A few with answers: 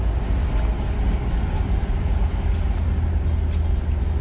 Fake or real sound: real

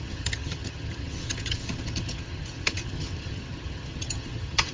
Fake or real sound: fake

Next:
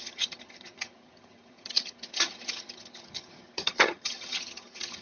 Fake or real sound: fake